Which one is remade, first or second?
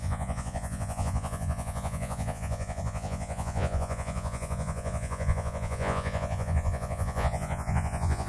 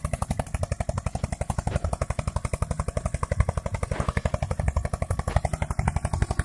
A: first